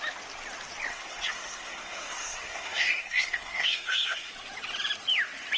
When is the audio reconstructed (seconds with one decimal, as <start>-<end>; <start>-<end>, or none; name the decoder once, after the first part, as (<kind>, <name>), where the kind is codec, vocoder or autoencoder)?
0.9-4.3 (codec, SNAC)

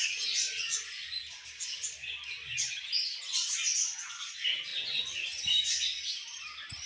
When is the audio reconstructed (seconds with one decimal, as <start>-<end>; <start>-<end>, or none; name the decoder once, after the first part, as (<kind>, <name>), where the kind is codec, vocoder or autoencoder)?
none

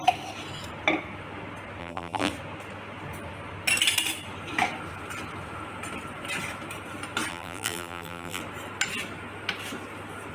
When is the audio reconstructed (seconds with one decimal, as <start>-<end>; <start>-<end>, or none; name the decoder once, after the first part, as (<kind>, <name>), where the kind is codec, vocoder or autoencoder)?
1.8-2.3 (vocoder, BigVGAN v2); 7.3-8.4